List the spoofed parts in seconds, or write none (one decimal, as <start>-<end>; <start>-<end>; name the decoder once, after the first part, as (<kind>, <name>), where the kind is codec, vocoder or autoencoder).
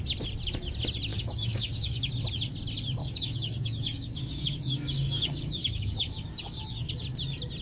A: 1.1-2.1 (codec, DAC); 3.0-6.9